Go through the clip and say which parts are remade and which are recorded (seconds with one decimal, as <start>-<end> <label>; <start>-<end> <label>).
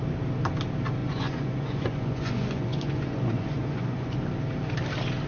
0.0-1.0 recorded; 1.0-4.2 remade; 4.2-5.3 recorded